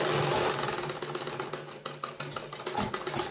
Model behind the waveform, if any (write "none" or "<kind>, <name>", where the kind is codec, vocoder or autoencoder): none